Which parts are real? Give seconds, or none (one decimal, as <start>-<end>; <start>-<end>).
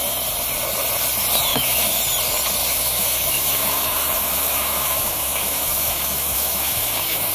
0.0-1.5; 2.0-2.6